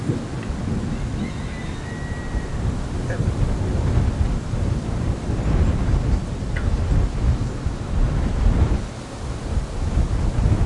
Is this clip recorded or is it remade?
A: recorded